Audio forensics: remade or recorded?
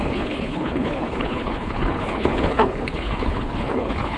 remade